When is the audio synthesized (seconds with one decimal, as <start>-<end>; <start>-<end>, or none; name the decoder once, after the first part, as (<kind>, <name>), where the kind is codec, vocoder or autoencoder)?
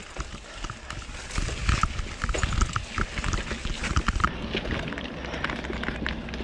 none